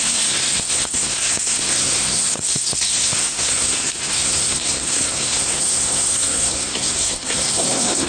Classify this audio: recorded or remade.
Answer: remade